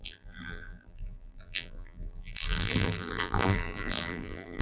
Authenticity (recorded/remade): remade